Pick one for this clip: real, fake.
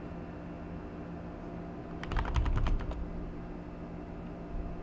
real